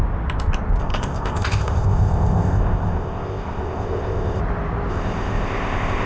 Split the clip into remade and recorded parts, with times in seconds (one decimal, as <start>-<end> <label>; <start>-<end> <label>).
0.0-0.8 recorded; 0.8-4.4 remade; 4.4-4.9 recorded; 4.9-6.1 remade